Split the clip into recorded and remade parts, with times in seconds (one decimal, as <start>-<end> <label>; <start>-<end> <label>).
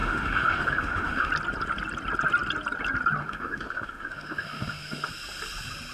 0.0-1.3 remade; 1.3-3.2 recorded; 3.2-5.1 remade; 5.1-5.9 recorded